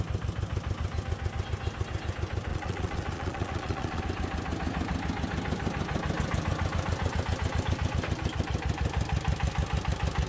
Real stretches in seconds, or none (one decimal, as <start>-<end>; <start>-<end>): 0.0-2.5; 4.0-10.3